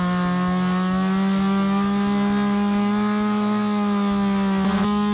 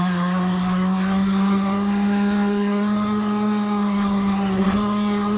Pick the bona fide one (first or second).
first